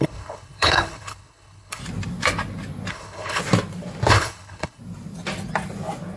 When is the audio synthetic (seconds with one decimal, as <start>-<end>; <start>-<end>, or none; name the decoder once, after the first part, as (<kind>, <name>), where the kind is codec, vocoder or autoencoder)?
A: 0.0-1.8 (codec, HILCodec); 2.9-3.4; 4.1-4.8